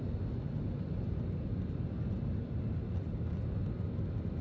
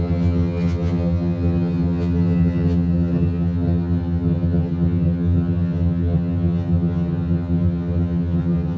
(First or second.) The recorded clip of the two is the first